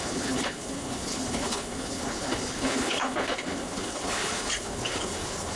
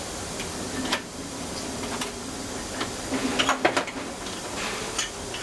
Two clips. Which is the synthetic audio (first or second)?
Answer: first